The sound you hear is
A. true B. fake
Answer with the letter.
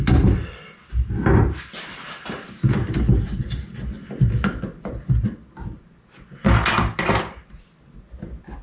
A